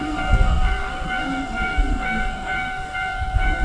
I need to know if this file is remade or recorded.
remade